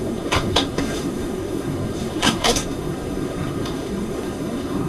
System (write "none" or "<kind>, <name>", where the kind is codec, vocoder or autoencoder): codec, SNAC